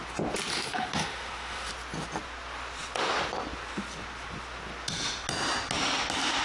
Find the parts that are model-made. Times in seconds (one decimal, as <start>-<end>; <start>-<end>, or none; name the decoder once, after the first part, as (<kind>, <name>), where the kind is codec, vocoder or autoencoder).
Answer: 0.5-1.7 (autoencoder, DAC-VAE)